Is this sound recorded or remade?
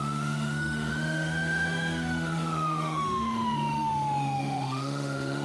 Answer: remade